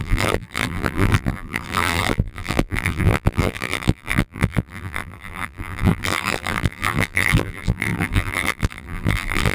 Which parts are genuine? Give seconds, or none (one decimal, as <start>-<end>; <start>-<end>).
none